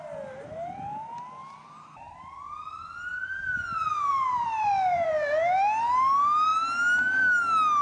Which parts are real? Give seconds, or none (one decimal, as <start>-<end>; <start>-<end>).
0.0-1.4; 5.9-7.8